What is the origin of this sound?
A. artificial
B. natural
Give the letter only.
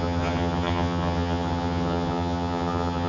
A